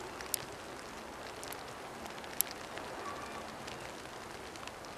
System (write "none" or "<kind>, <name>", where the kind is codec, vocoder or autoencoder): none